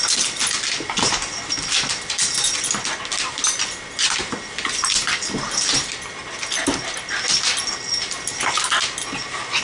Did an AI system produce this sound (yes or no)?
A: no